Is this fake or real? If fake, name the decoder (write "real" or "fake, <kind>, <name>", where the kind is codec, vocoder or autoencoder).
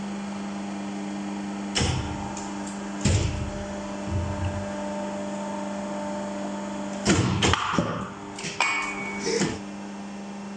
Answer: real